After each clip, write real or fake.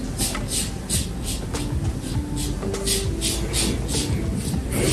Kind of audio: real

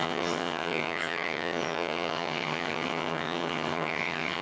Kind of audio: fake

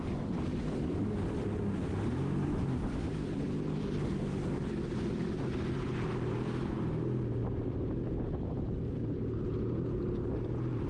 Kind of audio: real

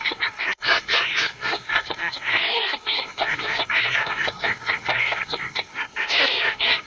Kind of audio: fake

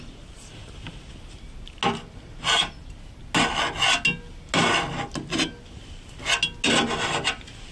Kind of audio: real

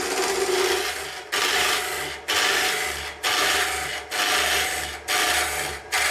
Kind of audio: real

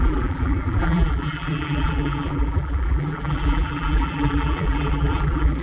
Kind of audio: fake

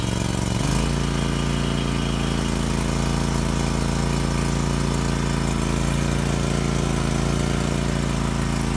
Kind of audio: real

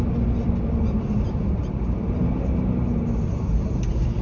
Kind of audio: real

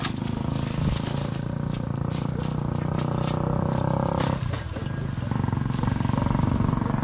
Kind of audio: real